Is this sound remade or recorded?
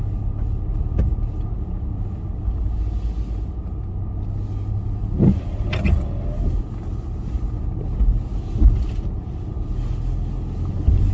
recorded